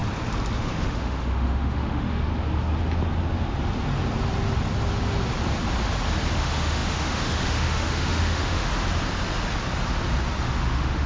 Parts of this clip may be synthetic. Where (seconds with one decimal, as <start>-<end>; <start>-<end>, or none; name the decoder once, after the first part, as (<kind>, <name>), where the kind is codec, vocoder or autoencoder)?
0.6-2.3 (autoencoder, DAC-VAE); 6.3-8.7; 10.4-11.1